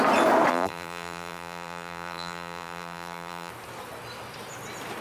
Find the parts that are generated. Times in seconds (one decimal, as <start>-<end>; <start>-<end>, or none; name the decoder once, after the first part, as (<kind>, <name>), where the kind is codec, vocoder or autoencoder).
0.5-3.5 (vocoder, BigVGAN v2)

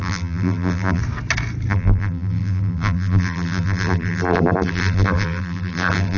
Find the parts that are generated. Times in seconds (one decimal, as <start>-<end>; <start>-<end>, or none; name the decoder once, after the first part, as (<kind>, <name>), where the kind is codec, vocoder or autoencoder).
0.0-1.0 (vocoder, BigVGAN v2); 1.7-6.2

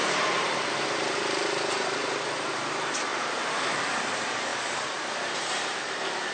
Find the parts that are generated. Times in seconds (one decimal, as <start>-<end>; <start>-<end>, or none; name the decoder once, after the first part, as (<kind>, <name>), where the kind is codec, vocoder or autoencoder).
0.0-6.3 (vocoder, BigVGAN v2)

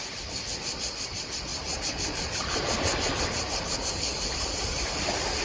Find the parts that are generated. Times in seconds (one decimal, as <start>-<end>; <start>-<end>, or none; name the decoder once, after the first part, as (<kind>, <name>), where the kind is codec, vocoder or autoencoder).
0.0-5.4 (vocoder, BigVGAN v2)

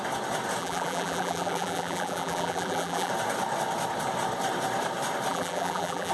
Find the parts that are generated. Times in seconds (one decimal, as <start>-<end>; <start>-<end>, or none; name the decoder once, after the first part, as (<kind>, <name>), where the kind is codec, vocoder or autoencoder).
0.6-3.1 (vocoder, BigVGAN v2); 5.3-6.1

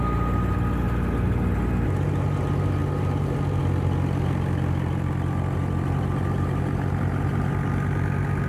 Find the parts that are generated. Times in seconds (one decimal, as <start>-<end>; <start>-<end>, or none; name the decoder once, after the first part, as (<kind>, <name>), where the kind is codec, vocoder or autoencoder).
none